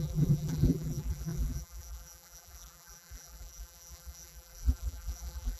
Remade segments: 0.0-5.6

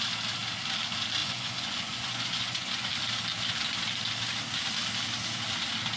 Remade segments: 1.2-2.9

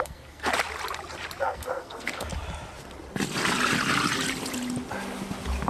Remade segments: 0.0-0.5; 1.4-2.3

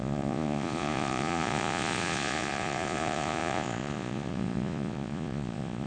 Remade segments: 0.0-5.9

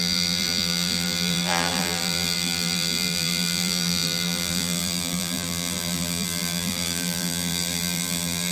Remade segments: 0.0-8.5

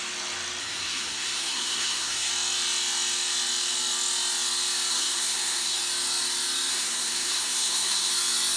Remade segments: 0.6-2.3; 4.9-5.8; 6.7-8.1

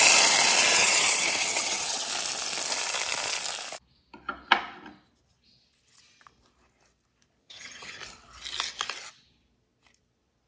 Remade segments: 0.7-2.1; 7.4-8.0

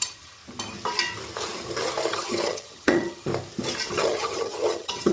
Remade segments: 0.0-0.4; 2.1-3.3; 3.9-5.1